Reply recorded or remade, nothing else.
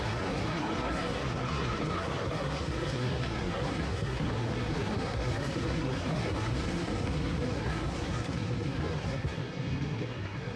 remade